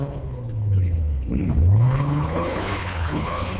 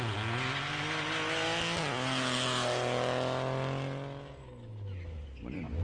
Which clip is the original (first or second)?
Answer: second